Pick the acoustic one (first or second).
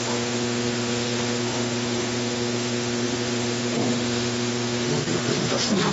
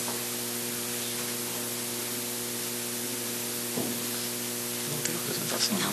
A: second